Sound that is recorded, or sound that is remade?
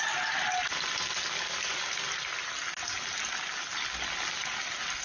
recorded